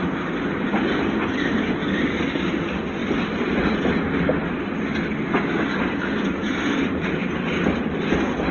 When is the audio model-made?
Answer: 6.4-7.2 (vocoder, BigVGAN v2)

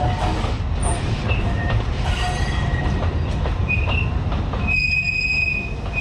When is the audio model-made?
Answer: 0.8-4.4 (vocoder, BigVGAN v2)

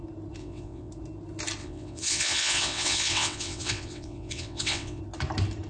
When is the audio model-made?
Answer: 0.4-0.9 (vocoder, WaveNeXt); 1.6-5.0

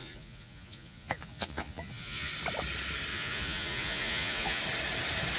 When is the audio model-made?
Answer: 0.0-2.3 (vocoder, Vocos); 3.1-4.6

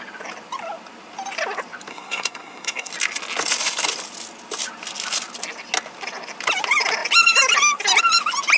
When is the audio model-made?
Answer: 1.9-2.9 (codec, SNAC)

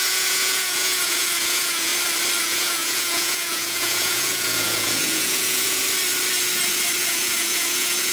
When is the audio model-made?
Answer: 0.0-1.9 (vocoder, Vocos); 2.4-5.8; 7.0-8.1

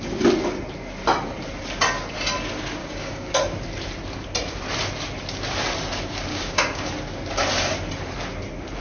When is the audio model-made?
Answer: 2.8-3.3 (codec, DAC); 6.3-6.9

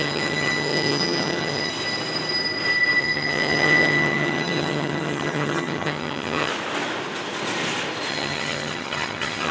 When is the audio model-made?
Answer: 0.0-1.7 (vocoder, HiFi-GAN); 3.0-6.5; 8.1-9.5